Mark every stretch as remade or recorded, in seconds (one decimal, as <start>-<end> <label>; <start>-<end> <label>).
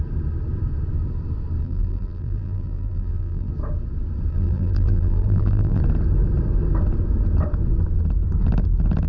0.0-1.6 recorded; 1.6-3.5 remade; 3.5-4.3 recorded; 4.3-5.8 remade; 5.8-9.1 recorded